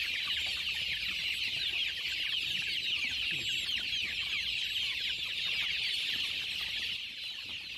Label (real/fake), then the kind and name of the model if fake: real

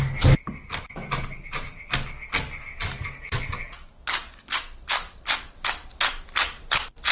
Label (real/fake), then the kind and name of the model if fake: real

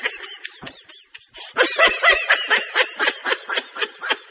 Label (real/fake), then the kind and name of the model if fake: fake, vocoder, BigVGAN v2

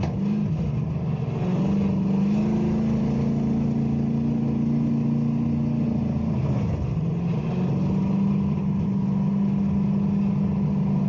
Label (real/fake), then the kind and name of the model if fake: real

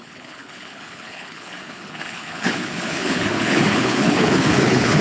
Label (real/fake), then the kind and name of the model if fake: fake, codec, HILCodec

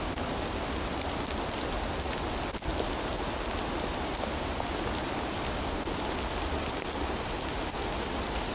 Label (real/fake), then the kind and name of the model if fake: real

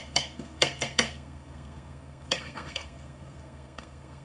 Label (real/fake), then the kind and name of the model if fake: fake, codec, SNAC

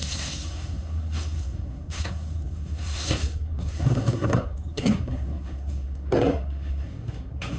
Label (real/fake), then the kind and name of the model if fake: fake, codec, SNAC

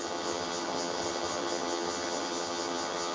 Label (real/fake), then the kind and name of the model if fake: fake, vocoder, HiFi-GAN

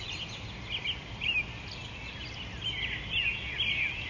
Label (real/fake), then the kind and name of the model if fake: real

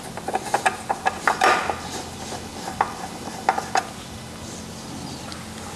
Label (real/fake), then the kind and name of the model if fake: real